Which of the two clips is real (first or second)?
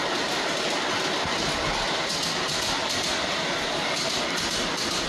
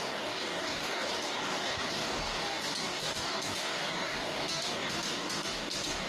first